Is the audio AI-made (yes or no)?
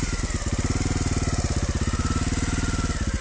no